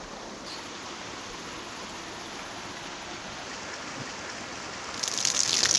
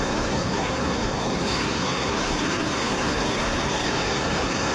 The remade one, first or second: second